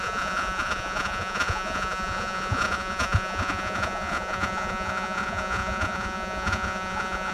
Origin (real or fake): fake